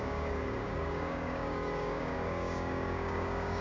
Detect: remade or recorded remade